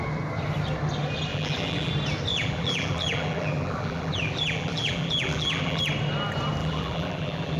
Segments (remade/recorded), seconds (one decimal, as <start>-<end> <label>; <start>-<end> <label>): 0.0-1.3 recorded; 1.3-1.9 remade; 1.9-2.3 recorded; 2.3-5.8 remade; 5.8-6.6 recorded; 6.6-7.6 remade